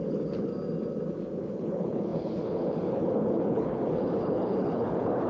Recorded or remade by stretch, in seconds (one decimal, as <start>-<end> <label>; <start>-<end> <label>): 0.0-0.5 remade; 0.5-1.4 recorded; 1.4-5.3 remade